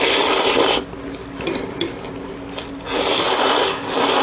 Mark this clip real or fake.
real